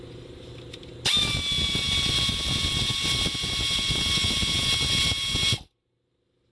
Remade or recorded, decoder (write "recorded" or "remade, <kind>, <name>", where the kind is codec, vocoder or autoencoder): recorded